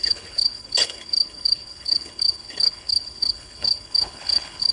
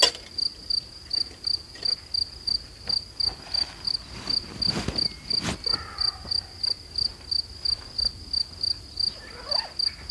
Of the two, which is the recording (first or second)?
second